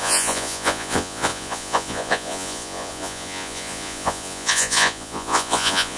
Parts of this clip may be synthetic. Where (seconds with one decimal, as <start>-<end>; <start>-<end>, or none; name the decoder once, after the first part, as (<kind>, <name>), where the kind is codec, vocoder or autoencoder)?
0.0-6.0 (vocoder, Vocos)